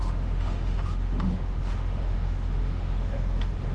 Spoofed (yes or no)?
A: yes